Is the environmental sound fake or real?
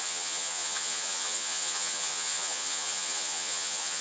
fake